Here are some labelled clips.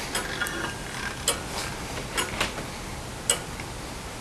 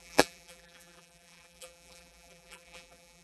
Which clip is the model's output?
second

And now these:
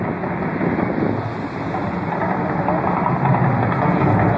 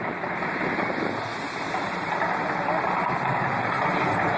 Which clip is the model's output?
second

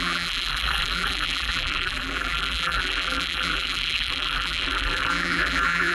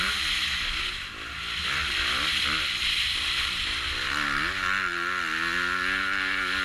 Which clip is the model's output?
first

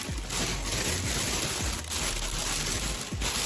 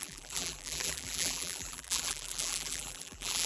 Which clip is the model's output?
second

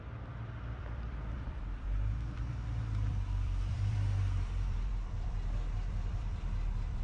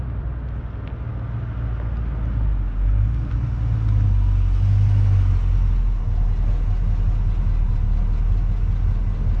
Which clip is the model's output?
first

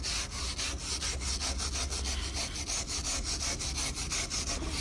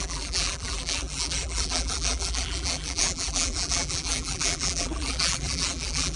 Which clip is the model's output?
second